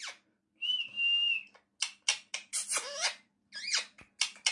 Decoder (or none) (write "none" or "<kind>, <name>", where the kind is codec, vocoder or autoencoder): none